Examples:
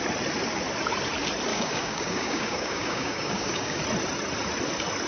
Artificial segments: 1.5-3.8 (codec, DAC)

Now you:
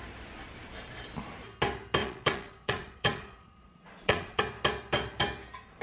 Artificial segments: 2.0-4.4 (vocoder, Vocos)

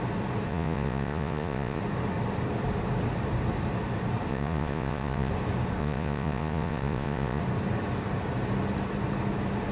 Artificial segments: 0.5-1.8 (vocoder, Vocos); 4.3-5.3; 5.8-7.4

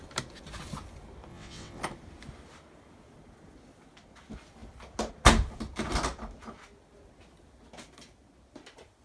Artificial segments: 1.3-1.8 (vocoder, WaveNeXt)

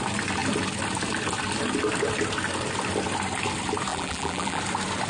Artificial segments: 3.9-4.6 (vocoder, BigVGAN v2)

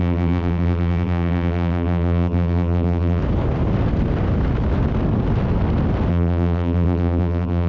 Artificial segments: 0.0-3.2 (vocoder, BigVGAN v2); 6.1-7.7

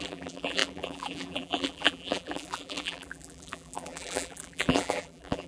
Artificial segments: 0.0-5.5 (vocoder, BigVGAN v2)